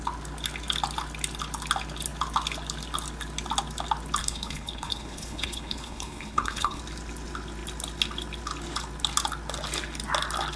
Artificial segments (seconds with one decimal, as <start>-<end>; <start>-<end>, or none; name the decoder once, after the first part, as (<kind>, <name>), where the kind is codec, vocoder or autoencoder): 4.2-6.8 (codec, HILCodec)